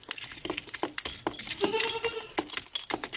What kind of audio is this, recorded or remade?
recorded